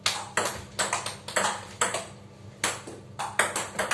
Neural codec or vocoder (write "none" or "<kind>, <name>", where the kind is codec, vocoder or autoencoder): none